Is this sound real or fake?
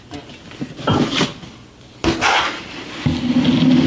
real